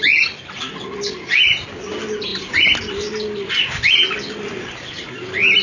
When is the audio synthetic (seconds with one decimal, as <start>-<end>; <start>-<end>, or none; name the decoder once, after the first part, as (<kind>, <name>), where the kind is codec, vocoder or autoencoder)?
none